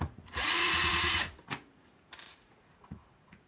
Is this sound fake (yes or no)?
yes